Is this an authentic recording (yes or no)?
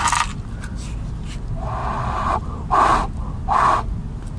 yes